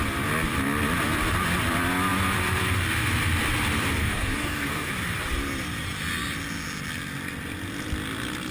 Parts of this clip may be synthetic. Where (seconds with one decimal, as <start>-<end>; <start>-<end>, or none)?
4.0-4.9